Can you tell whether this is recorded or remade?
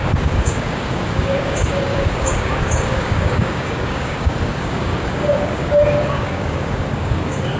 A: remade